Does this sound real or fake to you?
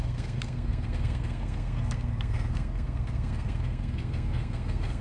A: fake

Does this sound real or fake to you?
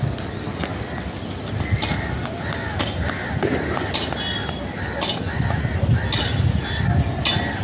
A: real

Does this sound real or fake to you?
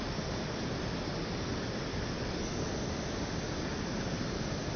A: real